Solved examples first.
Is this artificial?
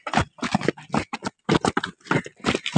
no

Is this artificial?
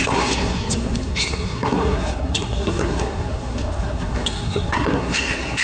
yes